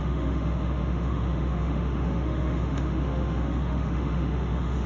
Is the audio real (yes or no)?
no